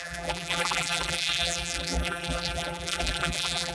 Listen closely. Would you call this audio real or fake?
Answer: fake